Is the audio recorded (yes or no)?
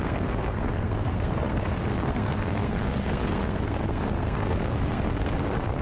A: no